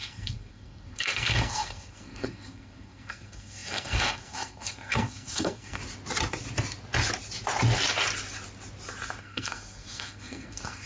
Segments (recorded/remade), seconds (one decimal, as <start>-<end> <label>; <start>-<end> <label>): 0.0-5.8 remade; 5.8-9.2 recorded; 9.2-10.9 remade